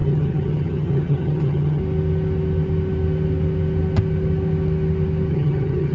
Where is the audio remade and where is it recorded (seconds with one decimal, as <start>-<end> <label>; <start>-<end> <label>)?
0.0-1.8 remade; 1.8-5.3 recorded; 5.3-5.9 remade